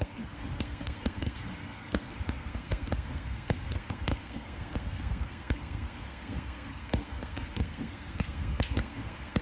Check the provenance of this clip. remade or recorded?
remade